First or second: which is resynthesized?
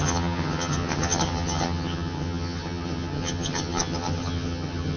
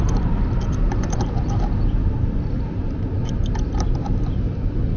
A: first